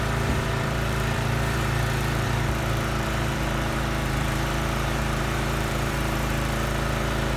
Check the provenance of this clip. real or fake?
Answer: fake